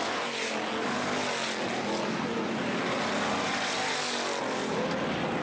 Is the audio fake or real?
real